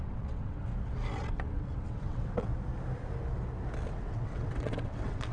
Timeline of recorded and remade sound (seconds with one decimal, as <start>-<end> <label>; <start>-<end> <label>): 0.0-0.7 remade; 0.7-1.3 recorded; 1.3-2.5 remade; 2.5-3.9 recorded; 3.9-5.3 remade